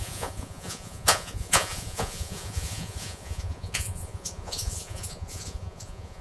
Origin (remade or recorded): remade